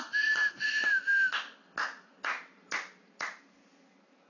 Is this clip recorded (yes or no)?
yes